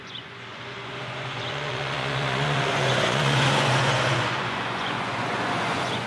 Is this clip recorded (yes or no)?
no